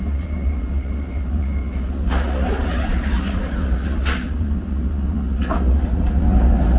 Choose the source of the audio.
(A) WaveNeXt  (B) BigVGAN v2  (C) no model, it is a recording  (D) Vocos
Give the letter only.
D